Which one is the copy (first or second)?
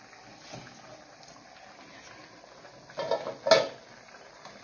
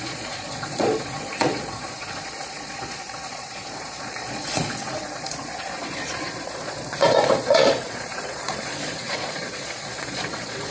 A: second